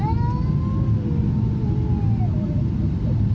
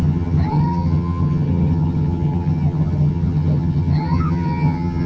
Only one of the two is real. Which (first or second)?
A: first